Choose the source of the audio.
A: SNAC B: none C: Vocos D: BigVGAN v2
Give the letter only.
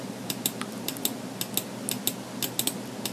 B